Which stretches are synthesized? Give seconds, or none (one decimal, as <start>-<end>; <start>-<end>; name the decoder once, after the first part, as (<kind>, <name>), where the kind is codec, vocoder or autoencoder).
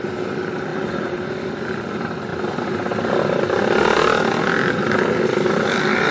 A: none